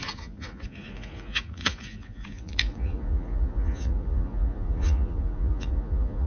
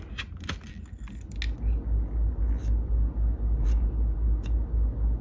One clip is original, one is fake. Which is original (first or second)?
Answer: second